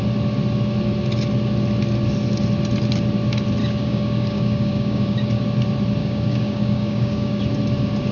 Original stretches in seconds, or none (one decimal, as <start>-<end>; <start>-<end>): 0.0-3.6; 5.4-6.0; 7.4-8.1